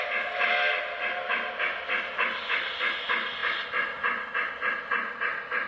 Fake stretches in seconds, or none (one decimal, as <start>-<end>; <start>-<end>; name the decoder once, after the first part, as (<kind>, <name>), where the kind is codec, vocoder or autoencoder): none